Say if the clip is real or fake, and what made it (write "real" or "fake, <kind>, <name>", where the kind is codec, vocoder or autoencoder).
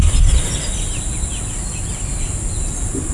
real